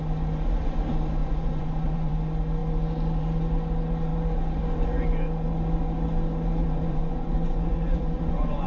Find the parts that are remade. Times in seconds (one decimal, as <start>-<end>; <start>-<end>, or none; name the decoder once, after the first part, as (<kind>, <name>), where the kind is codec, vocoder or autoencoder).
1.2-2.1 (vocoder, Vocos); 6.6-8.7